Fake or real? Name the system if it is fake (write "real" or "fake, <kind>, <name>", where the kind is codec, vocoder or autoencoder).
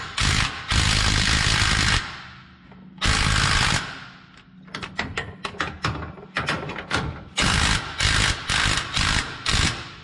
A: real